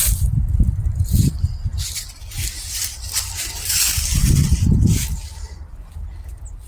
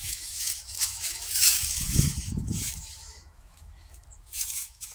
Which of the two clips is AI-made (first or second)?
second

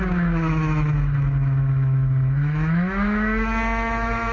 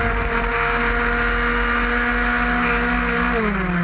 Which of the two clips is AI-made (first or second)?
first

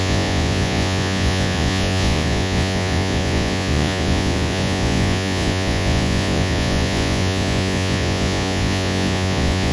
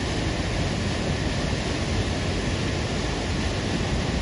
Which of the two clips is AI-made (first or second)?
first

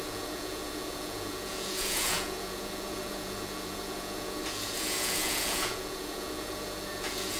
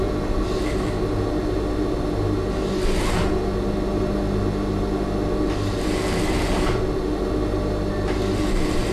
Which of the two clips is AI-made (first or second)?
first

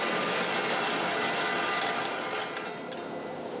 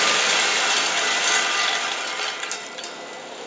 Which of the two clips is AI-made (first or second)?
second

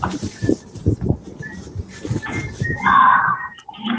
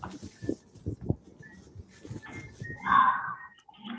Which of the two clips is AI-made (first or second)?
first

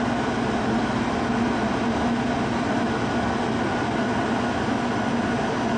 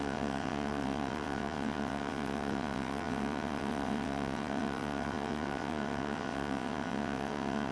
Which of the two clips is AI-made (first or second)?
second